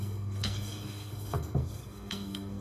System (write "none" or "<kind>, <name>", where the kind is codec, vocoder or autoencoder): codec, SNAC